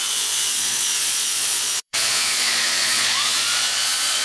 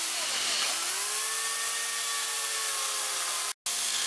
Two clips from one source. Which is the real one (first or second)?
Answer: second